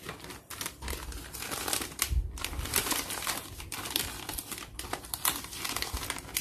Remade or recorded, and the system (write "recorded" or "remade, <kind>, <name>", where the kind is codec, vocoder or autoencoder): recorded